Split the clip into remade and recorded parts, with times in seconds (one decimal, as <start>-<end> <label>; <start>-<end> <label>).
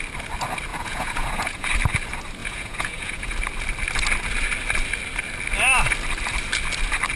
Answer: 0.0-0.7 recorded; 0.7-1.7 remade; 1.7-2.4 recorded; 2.4-3.3 remade; 3.3-7.2 recorded